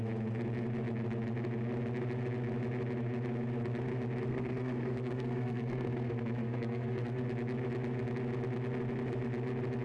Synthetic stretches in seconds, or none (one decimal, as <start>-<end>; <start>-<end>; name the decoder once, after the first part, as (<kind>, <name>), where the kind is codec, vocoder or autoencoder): 4.3-7.2 (codec, SNAC)